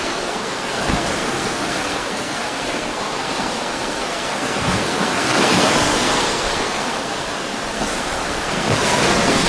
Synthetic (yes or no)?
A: yes